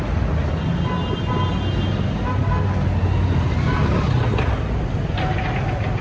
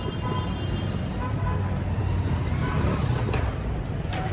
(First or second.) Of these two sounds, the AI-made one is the second